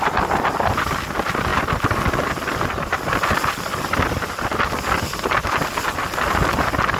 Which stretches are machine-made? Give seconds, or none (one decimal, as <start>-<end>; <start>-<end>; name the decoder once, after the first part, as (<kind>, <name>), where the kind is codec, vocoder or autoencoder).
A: none